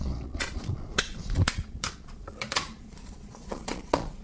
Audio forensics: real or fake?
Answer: fake